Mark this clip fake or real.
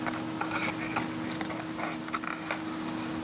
real